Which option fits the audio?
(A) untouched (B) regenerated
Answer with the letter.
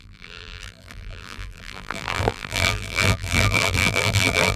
B